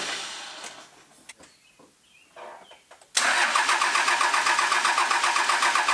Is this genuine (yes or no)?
yes